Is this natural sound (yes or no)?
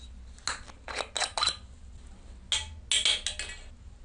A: yes